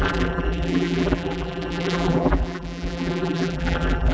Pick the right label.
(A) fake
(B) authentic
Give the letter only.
A